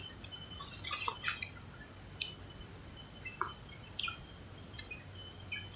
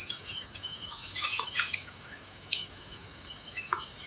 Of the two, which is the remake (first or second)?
second